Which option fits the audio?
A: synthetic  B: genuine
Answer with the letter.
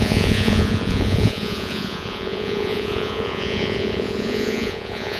A